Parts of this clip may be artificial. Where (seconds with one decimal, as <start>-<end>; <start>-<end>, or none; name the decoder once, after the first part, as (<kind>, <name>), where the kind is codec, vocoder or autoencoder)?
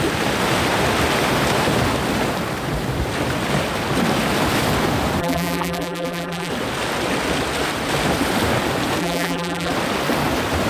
5.2-6.5 (vocoder, BigVGAN v2); 9.0-9.7